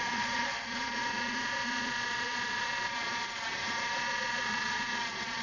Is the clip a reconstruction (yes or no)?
yes